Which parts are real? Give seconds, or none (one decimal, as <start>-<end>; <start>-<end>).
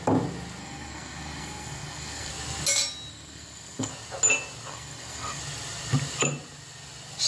0.0-0.6; 2.3-3.1; 3.9-4.7; 5.4-7.3